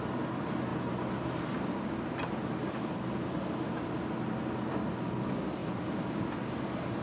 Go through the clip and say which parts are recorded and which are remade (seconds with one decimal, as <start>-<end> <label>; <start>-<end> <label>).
0.0-7.0 recorded